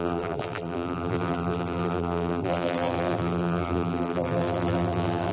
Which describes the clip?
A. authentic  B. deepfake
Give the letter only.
B